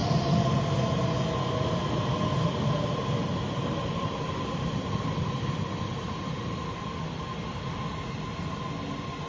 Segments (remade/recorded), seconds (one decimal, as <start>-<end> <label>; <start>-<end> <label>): 0.0-9.3 recorded